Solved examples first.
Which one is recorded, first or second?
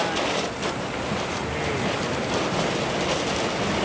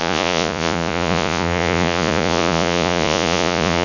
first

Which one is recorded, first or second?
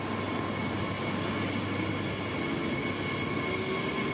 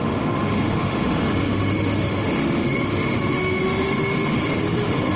first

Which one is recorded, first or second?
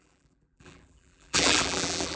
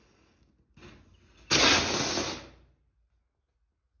second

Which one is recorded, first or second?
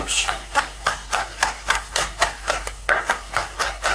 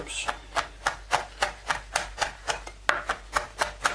second